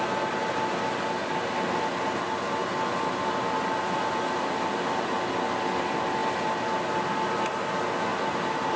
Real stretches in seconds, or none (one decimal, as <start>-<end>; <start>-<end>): 0.0-2.6; 5.4-6.2; 7.0-8.1

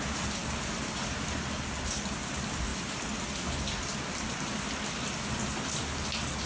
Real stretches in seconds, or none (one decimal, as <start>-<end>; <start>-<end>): 0.0-6.5

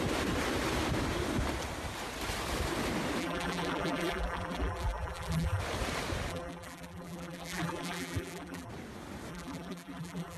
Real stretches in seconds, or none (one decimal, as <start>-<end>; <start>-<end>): 0.0-3.2; 5.6-6.3; 8.7-9.3

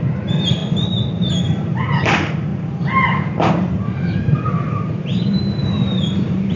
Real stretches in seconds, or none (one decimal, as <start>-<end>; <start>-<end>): 0.6-1.3

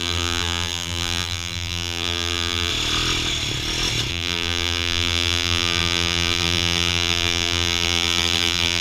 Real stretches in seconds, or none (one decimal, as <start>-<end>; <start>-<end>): 2.7-4.1

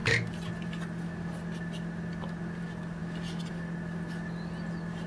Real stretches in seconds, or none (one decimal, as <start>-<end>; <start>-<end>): 0.0-5.1

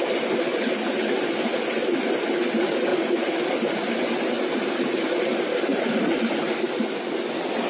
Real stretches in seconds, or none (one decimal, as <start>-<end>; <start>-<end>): 0.0-7.7

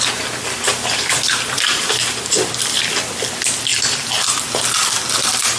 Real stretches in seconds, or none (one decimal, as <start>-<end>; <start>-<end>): 0.0-0.7; 2.2-3.7